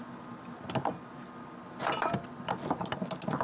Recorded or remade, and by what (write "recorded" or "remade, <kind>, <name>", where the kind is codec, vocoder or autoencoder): recorded